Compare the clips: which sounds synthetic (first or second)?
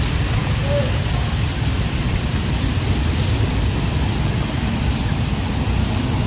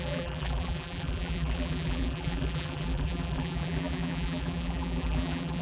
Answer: second